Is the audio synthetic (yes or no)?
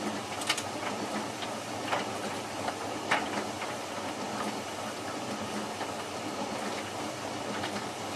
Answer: no